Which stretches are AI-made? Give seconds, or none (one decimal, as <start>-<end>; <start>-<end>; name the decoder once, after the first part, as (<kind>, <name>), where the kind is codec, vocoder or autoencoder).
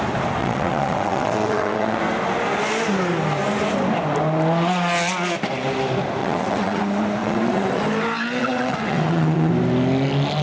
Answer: 0.4-2.0 (vocoder, WaveNeXt); 6.2-6.8; 7.2-7.8; 8.4-9.5